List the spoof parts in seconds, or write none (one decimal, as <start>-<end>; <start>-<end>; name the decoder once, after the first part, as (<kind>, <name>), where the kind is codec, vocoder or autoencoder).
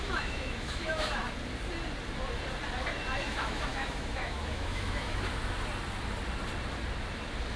0.0-1.2 (autoencoder, DAC-VAE); 3.2-5.3